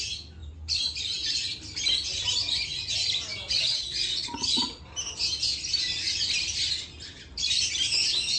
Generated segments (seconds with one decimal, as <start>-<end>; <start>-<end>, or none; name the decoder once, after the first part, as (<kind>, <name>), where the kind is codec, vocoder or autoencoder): 3.3-4.8 (vocoder, Vocos)